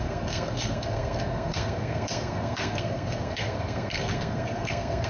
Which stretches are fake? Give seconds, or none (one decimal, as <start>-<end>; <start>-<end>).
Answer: 0.0-5.1